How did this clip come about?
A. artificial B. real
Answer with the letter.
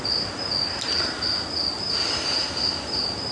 B